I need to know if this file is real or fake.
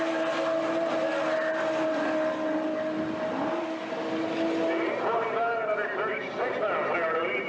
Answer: real